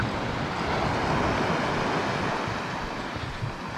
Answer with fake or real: real